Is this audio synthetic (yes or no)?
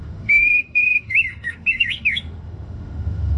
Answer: yes